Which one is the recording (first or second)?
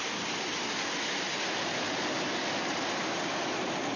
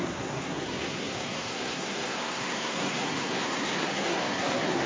first